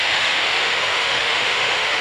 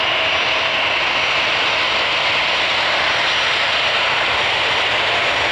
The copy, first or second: first